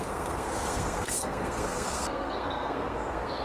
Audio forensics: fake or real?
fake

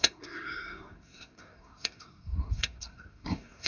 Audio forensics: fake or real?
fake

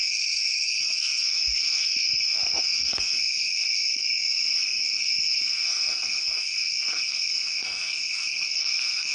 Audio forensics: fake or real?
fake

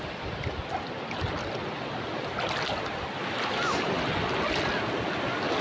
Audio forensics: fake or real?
real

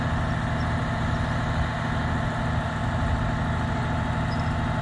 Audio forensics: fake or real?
real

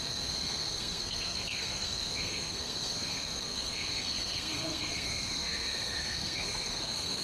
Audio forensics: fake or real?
fake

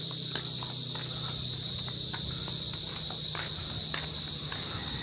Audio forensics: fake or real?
real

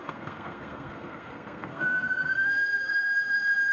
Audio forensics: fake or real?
fake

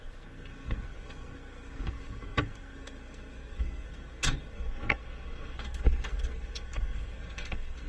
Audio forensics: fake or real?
fake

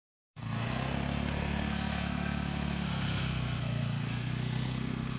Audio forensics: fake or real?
fake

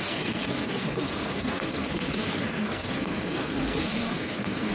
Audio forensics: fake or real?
fake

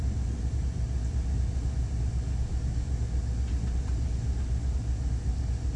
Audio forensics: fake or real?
real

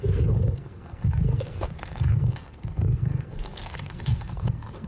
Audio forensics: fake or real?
fake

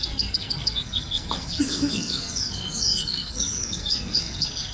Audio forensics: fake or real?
fake